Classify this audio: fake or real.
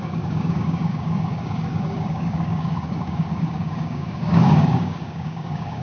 fake